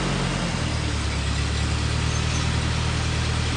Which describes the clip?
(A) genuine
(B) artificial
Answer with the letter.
A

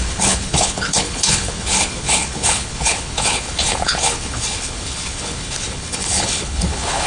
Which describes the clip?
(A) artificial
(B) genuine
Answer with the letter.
A